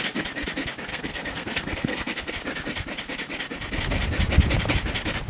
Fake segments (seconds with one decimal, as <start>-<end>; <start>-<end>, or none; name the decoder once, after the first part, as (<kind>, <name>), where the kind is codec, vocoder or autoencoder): 0.9-2.3 (codec, SNAC)